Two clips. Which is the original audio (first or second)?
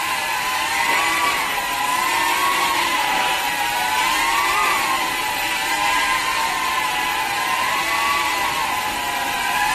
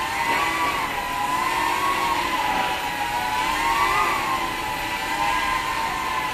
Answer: second